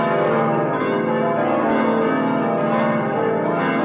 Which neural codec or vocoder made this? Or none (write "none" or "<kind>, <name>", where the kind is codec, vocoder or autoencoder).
none